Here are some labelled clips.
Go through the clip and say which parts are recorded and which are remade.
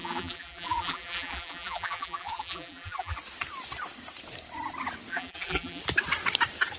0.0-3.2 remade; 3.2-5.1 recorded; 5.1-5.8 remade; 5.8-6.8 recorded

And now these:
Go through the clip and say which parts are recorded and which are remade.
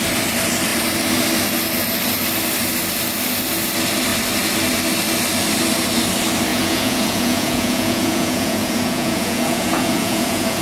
0.0-6.5 recorded; 6.5-10.6 remade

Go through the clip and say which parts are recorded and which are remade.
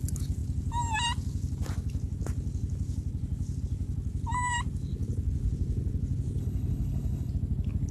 0.0-6.4 recorded; 6.4-7.3 remade; 7.3-7.9 recorded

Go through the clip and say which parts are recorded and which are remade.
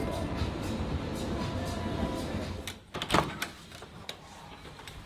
0.0-1.1 remade; 1.1-3.2 recorded; 3.2-5.1 remade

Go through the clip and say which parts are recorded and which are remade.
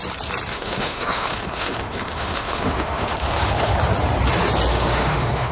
0.0-0.5 recorded; 0.5-3.8 remade; 3.8-4.7 recorded; 4.7-5.5 remade